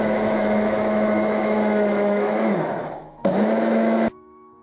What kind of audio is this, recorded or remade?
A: remade